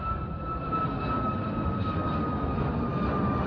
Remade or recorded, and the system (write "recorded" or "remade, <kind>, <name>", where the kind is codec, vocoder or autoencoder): remade, vocoder, BigVGAN v2